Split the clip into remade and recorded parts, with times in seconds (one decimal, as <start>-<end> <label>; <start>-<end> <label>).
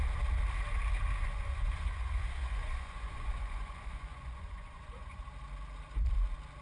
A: 0.0-1.2 recorded; 1.2-5.2 remade; 5.2-6.6 recorded